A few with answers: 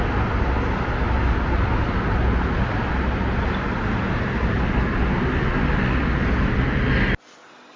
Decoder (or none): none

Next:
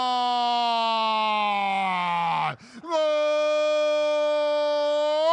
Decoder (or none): none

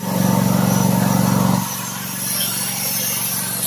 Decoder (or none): none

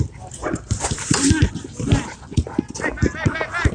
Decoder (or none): none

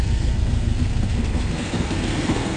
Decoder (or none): codec, SNAC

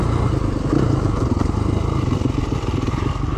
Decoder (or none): none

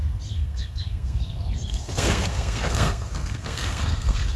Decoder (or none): codec, SNAC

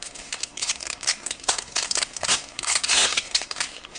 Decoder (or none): codec, SNAC